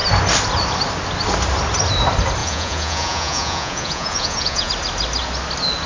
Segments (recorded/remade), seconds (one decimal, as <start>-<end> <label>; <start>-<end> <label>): 0.0-2.4 recorded; 2.4-4.7 remade; 4.7-5.9 recorded